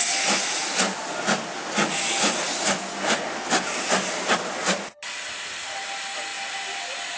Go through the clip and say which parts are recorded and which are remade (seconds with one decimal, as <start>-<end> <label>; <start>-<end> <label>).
0.0-7.2 recorded